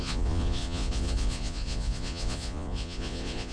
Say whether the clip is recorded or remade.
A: remade